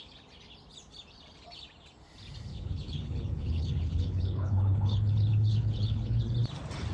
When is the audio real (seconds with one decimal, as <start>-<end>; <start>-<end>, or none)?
0.0-2.5; 6.2-6.9